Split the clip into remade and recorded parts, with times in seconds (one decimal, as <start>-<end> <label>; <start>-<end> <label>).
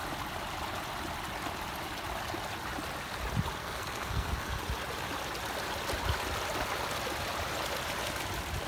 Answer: 0.0-3.6 recorded; 3.6-4.6 remade; 4.6-8.7 recorded